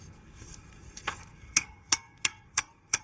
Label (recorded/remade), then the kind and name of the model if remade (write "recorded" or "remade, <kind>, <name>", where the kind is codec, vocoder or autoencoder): remade, codec, SNAC